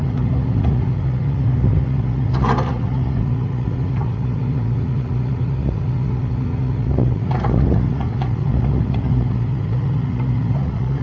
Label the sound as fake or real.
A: fake